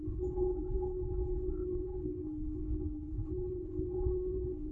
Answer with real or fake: fake